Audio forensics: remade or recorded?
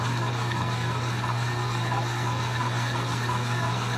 remade